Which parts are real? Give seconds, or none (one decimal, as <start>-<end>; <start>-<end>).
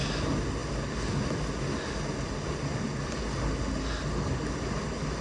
0.0-5.2